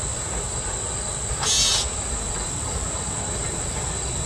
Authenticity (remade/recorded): recorded